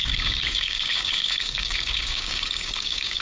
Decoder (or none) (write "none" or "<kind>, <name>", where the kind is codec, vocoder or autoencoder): codec, DAC